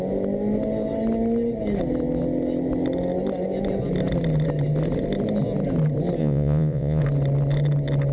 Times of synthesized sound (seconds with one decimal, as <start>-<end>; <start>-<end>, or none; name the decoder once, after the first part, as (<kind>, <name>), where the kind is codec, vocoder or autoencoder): 6.2-7.0 (vocoder, Vocos)